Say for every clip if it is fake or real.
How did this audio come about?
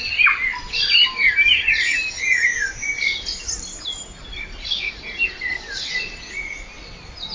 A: real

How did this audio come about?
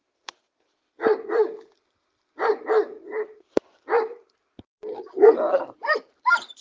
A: fake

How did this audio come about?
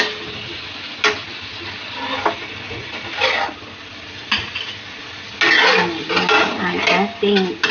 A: real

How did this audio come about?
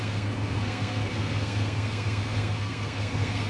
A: fake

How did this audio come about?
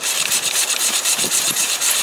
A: fake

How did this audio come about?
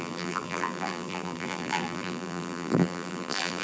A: fake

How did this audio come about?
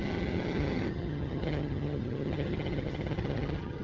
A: fake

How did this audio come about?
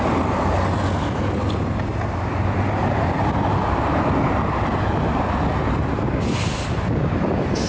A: real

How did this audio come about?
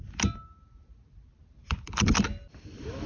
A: real